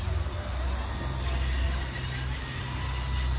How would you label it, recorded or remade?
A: recorded